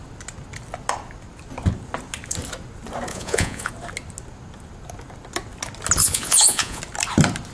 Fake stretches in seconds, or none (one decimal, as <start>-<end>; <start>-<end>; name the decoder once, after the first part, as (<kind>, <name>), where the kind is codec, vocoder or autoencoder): 3.1-3.7 (vocoder, Vocos); 6.0-6.8